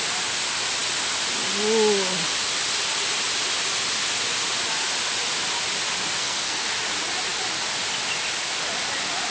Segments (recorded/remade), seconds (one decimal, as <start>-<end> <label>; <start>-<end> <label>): 0.0-6.2 recorded; 6.2-6.7 remade; 6.7-9.3 recorded